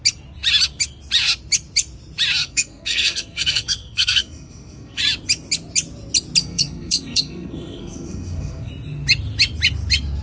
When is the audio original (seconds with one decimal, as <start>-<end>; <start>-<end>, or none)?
0.0-2.4; 5.0-6.4; 8.7-10.2